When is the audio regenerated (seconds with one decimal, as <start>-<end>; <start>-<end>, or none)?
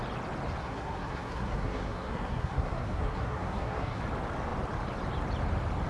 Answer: 0.6-4.0